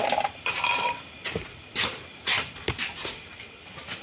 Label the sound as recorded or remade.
recorded